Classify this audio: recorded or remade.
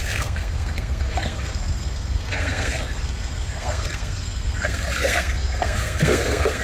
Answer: remade